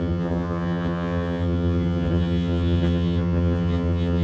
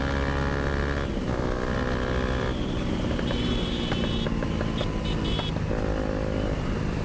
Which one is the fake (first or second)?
first